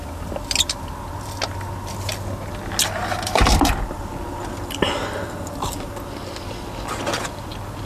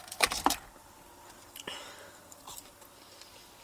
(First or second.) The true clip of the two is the first